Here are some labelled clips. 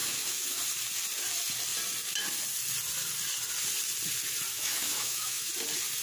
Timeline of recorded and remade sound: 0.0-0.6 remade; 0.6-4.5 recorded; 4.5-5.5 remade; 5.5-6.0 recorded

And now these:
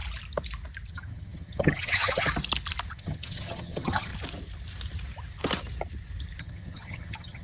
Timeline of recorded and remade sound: 0.0-0.9 recorded; 0.9-2.3 remade; 2.3-2.9 recorded; 2.9-4.1 remade; 4.1-6.4 recorded; 6.4-7.4 remade

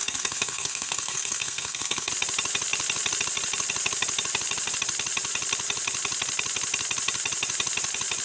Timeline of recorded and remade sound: 0.0-2.1 remade; 2.1-8.2 recorded